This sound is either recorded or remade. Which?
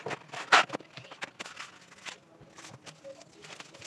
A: recorded